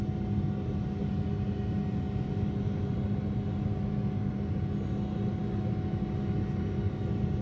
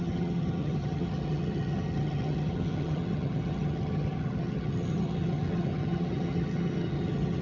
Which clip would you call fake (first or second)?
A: second